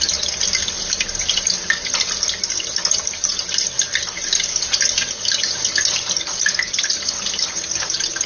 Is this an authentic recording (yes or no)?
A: yes